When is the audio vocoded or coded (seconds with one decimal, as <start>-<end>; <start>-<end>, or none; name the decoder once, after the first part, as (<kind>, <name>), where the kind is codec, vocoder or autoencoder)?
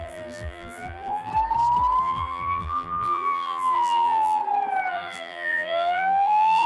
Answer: 0.0-1.3 (vocoder, BigVGAN v2); 2.0-4.4; 4.9-6.7